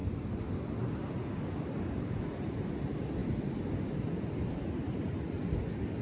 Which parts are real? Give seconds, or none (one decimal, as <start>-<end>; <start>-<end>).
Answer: 0.0-6.0